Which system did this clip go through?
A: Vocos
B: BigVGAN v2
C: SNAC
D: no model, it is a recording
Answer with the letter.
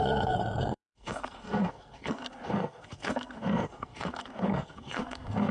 C